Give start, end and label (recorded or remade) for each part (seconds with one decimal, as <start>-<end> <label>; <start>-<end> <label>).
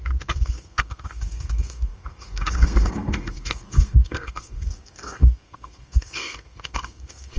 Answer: 0.0-7.4 remade